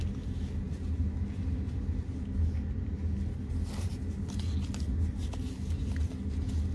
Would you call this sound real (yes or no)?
yes